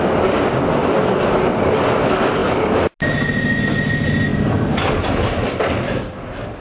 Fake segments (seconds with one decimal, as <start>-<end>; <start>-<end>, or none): none